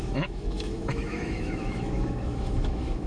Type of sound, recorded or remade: remade